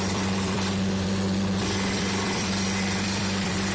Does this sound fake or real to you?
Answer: fake